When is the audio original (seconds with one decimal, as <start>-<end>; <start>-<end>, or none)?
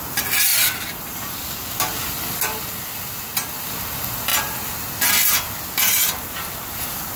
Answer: 0.0-7.2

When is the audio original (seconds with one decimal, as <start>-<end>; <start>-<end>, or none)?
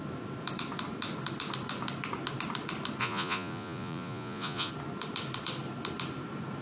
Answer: 0.0-3.0; 4.7-6.6